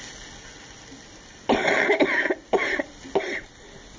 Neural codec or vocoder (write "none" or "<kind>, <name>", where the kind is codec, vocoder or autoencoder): none